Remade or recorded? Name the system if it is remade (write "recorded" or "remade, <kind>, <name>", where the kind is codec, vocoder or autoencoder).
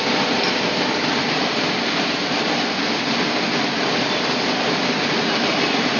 remade, vocoder, BigVGAN v2